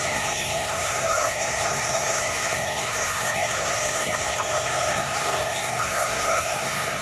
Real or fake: fake